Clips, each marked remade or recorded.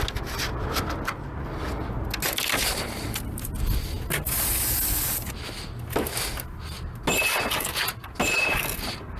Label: recorded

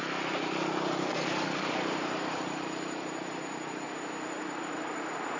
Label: remade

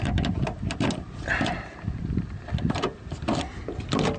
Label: recorded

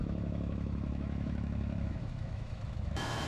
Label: remade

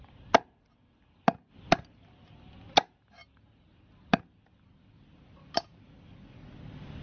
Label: recorded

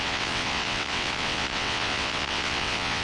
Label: remade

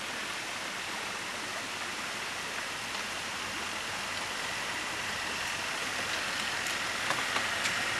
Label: recorded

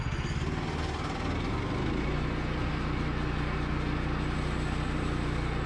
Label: recorded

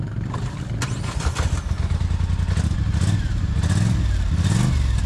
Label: recorded